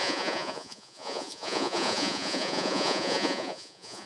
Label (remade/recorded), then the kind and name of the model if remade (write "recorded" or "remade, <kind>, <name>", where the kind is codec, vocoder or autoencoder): remade, vocoder, Vocos